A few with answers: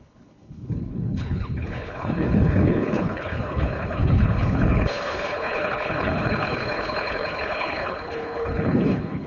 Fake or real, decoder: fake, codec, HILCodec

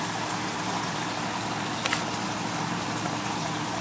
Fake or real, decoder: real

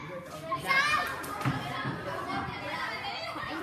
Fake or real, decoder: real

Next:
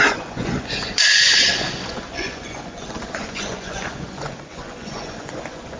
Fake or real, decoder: fake, vocoder, Vocos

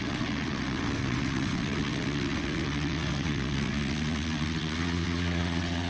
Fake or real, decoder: fake, vocoder, WaveNeXt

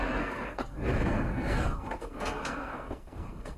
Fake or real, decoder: fake, codec, SNAC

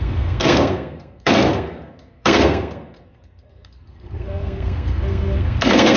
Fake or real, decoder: fake, codec, SNAC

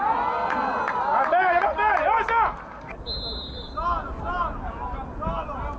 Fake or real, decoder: real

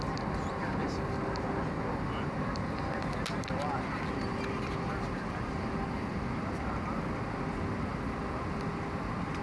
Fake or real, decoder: real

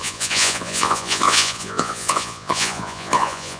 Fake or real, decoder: fake, vocoder, Vocos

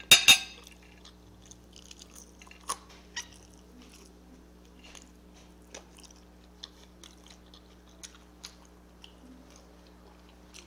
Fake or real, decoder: real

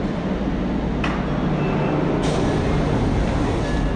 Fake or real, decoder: real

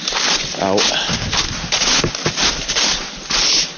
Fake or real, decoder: real